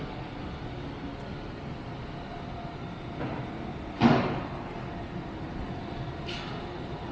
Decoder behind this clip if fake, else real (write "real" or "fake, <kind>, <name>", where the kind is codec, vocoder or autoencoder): real